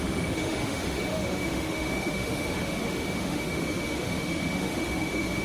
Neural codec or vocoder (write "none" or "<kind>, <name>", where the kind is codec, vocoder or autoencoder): autoencoder, DAC-VAE